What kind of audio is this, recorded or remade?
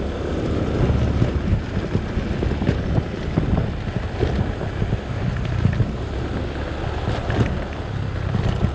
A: recorded